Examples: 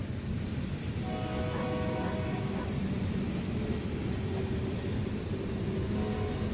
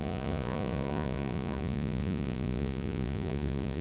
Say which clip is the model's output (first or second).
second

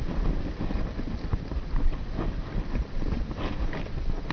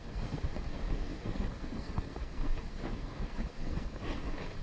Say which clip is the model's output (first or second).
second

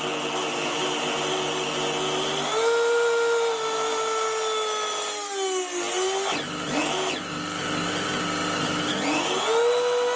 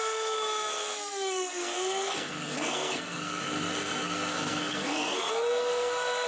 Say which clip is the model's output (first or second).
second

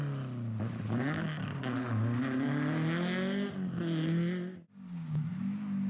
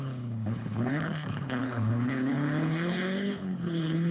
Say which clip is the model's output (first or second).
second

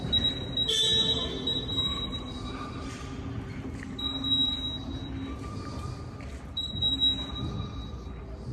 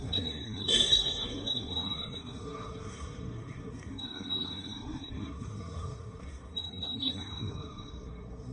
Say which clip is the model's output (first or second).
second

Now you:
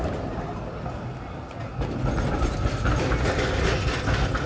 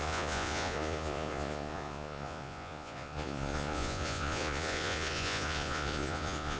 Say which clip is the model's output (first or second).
second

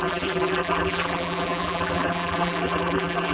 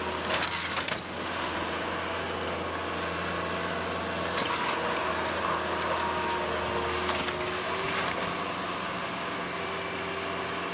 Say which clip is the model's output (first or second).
first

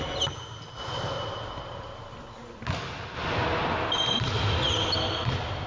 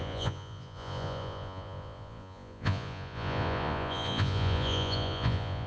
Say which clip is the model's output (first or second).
second